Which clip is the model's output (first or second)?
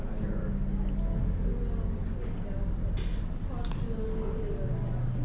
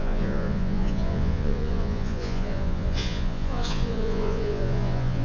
second